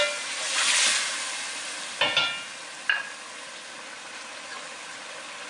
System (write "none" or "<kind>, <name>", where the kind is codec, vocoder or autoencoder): none